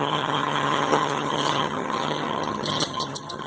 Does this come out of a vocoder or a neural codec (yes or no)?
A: yes